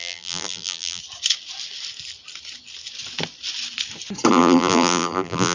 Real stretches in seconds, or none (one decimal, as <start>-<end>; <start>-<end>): 1.0-4.3

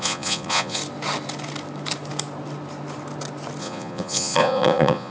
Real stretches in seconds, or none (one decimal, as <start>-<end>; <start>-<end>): 0.8-3.6

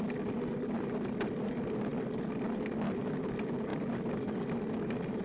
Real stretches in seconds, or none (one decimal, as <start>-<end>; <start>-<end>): 0.0-5.2

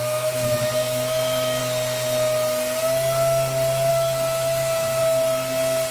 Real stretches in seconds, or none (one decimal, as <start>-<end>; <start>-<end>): 1.6-3.9; 5.0-5.9